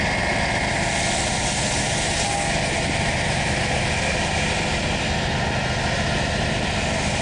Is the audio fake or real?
real